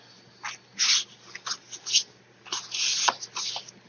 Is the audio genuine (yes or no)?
yes